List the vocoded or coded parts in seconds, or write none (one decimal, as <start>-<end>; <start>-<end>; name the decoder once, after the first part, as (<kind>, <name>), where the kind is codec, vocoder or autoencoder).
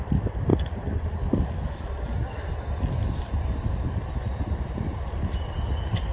0.0-0.5 (vocoder, BigVGAN v2); 4.2-6.1